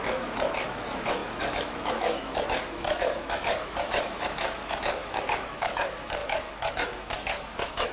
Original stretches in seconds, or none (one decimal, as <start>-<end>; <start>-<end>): none